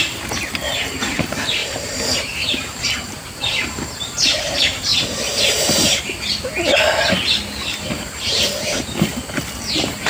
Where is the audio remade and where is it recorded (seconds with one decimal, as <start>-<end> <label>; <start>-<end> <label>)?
0.0-4.9 remade; 4.9-5.4 recorded; 5.4-6.5 remade; 6.5-7.9 recorded; 7.9-9.1 remade; 9.1-9.7 recorded; 9.7-10.1 remade